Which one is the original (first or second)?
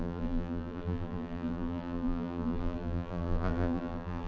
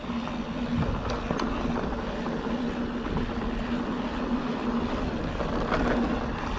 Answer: second